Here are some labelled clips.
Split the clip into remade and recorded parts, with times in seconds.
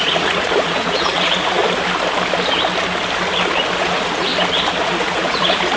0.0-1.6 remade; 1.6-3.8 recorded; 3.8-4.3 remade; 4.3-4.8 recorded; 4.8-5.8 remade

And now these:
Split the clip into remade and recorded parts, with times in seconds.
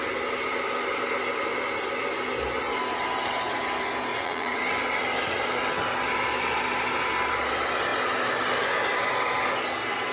0.0-4.1 recorded; 4.1-4.6 remade; 4.6-10.1 recorded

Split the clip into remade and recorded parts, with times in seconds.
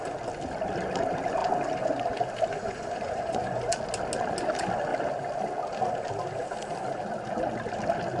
0.0-2.6 recorded; 2.6-3.6 remade; 3.6-8.2 recorded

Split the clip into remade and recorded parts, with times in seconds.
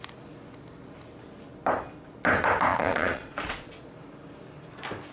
0.0-2.7 recorded; 2.7-3.9 remade; 3.9-5.1 recorded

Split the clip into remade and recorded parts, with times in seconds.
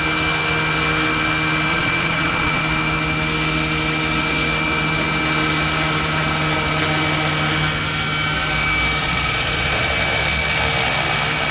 0.0-1.7 recorded; 1.7-2.6 remade; 2.6-9.0 recorded; 9.0-9.9 remade; 9.9-11.5 recorded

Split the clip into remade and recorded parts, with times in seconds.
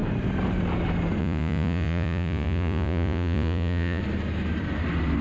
0.0-1.2 recorded; 1.2-4.0 remade; 4.0-5.2 recorded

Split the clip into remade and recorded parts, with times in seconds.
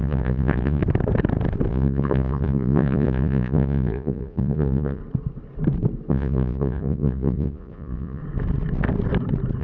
0.0-0.8 remade; 0.8-1.7 recorded; 1.7-5.0 remade; 5.0-6.1 recorded; 6.1-8.2 remade; 8.2-9.6 recorded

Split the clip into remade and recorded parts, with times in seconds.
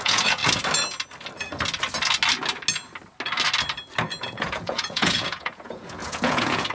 0.0-0.4 remade; 0.4-4.2 recorded; 4.2-6.7 remade